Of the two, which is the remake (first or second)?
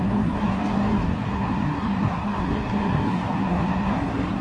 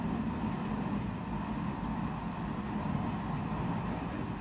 first